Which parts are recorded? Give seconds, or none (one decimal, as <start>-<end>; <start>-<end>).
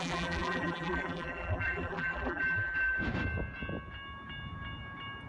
3.0-5.3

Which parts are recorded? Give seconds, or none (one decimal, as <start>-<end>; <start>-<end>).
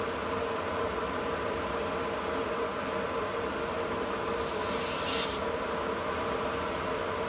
0.0-7.3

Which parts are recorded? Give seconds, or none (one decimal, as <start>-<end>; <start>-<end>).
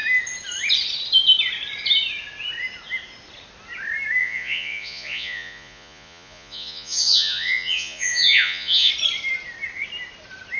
0.0-4.2; 8.9-10.6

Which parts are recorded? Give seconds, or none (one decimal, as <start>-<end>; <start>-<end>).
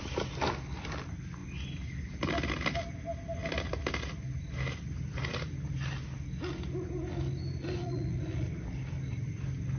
0.0-7.8; 8.5-9.8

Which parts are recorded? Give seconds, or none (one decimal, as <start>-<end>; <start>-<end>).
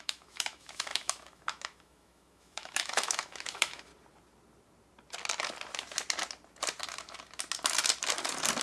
3.9-8.6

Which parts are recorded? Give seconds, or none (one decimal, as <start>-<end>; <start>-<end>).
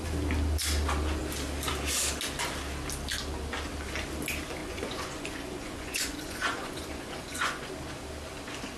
0.0-4.6; 7.7-8.8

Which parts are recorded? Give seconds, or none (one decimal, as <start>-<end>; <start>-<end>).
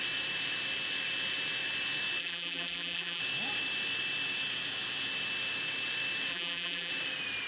0.0-2.2; 3.2-6.3; 6.9-7.5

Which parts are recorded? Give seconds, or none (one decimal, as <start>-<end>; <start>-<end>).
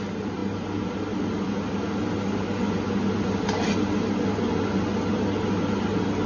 0.0-6.3